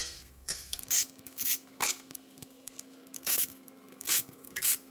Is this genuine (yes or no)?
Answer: no